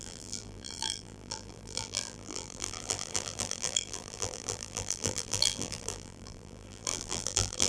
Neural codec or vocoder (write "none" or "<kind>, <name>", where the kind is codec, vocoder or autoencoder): vocoder, BigVGAN v2